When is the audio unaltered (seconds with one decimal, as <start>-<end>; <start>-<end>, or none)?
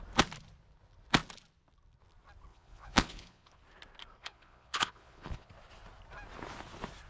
0.0-2.5; 3.6-4.2; 5.5-7.1